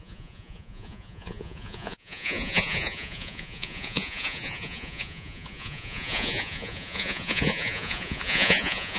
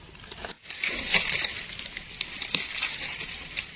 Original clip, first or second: second